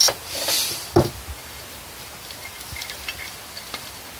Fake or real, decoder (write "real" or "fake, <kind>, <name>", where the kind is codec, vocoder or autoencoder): real